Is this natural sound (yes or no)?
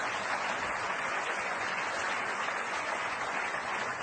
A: no